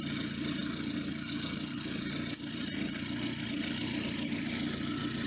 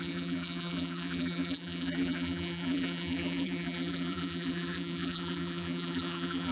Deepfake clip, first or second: second